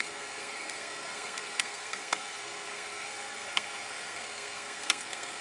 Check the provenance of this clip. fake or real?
fake